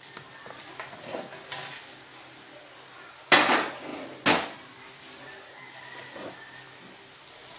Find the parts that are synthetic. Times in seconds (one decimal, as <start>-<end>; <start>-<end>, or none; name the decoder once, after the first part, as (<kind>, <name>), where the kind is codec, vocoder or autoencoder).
none